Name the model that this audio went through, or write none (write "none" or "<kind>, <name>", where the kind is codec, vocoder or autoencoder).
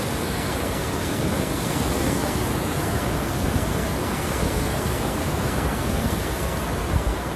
codec, SNAC